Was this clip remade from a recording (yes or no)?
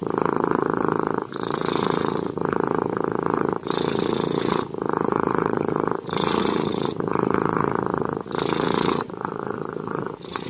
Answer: yes